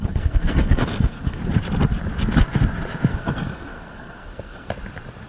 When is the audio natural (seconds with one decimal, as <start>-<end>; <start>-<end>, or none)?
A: 1.4-3.1; 4.7-5.3